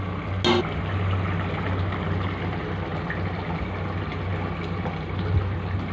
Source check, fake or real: real